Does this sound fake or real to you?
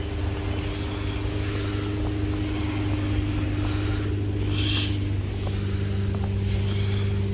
real